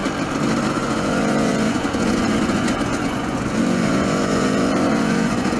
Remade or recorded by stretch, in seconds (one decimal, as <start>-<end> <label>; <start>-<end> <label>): 0.0-0.7 recorded; 0.7-5.6 remade